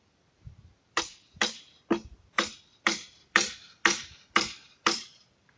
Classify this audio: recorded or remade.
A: remade